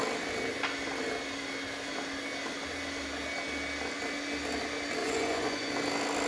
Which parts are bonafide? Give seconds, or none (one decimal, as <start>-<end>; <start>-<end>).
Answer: 0.0-5.0; 5.7-6.3

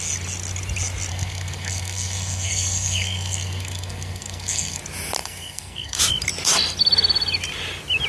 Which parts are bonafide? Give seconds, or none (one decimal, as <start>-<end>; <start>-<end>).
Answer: 0.0-1.1; 4.8-5.2; 6.0-8.1

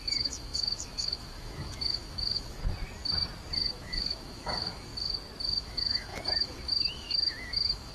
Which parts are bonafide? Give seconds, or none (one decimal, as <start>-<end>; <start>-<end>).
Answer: 2.6-3.7; 4.9-5.6

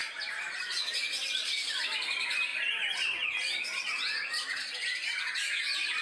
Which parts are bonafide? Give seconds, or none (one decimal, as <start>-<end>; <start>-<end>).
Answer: 0.6-6.0

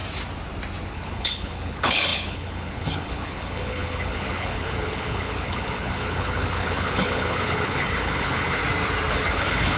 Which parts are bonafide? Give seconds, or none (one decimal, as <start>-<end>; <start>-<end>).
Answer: 0.0-0.9; 8.6-9.1

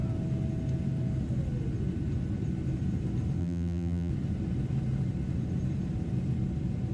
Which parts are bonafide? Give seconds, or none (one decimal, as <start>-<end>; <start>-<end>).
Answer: 0.0-3.4; 4.1-6.9